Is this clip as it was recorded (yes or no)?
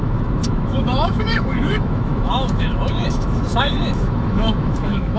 no